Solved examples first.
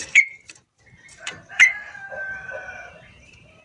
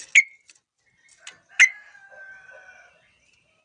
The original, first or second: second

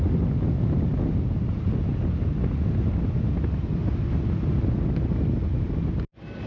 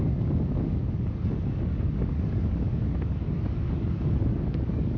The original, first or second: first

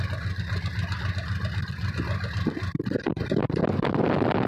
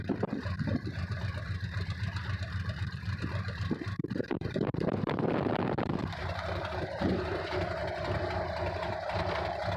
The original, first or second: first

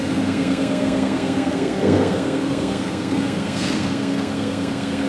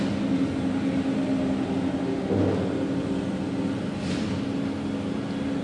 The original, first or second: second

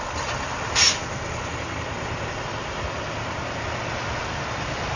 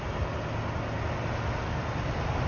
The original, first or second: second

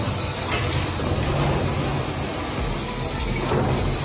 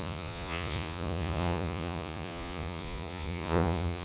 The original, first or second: first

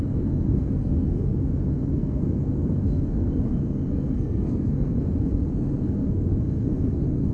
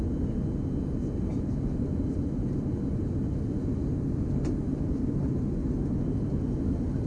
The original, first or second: second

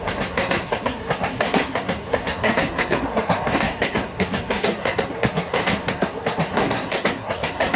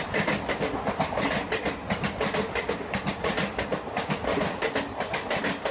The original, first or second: second